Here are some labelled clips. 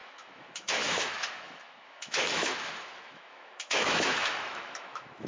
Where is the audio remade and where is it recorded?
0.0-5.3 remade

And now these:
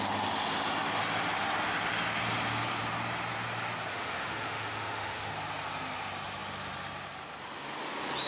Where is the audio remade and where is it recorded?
0.0-3.9 recorded; 3.9-5.3 remade; 5.3-8.3 recorded

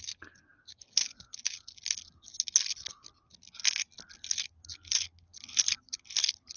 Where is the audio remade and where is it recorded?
0.0-6.6 recorded

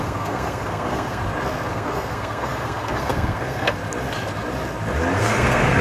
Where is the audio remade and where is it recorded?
0.0-1.2 remade; 1.2-1.7 recorded; 1.7-3.8 remade; 3.8-5.2 recorded; 5.2-5.8 remade

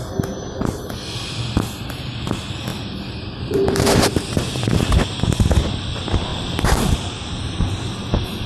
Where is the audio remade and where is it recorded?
0.0-2.7 recorded; 2.7-4.8 remade; 4.8-6.3 recorded; 6.3-7.1 remade; 7.1-8.5 recorded